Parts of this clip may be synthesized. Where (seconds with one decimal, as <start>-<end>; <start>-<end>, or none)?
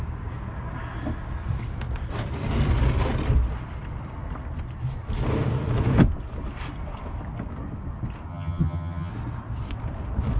8.3-9.1